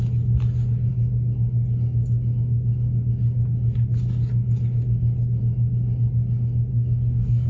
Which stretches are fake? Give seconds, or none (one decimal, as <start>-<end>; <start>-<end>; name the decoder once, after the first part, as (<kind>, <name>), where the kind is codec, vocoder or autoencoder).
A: 6.7-7.5 (codec, SNAC)